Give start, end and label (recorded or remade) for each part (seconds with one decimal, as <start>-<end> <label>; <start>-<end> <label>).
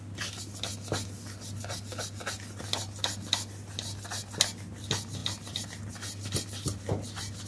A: 0.0-7.5 recorded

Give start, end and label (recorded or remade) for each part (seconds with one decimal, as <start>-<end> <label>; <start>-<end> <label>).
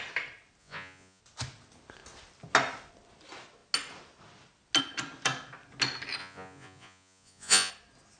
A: 0.0-0.6 recorded; 0.6-1.2 remade; 1.2-6.2 recorded; 6.2-7.7 remade; 7.7-8.2 recorded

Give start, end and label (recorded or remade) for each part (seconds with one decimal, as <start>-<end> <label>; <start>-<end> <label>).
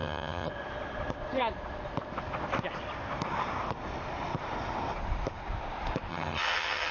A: 0.0-0.5 remade; 0.5-6.1 recorded; 6.1-6.9 remade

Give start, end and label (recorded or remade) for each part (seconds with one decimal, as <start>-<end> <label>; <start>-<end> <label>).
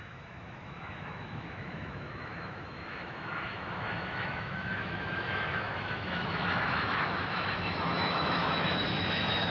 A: 0.0-9.5 remade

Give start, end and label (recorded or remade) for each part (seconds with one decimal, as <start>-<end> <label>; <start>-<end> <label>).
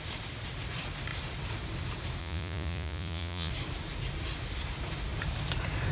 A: 0.0-2.2 recorded; 2.2-3.5 remade; 3.5-5.9 recorded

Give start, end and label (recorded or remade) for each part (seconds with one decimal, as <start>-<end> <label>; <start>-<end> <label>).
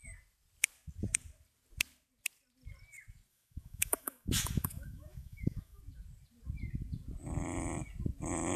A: 0.0-3.3 recorded; 3.3-5.8 remade; 5.8-8.6 recorded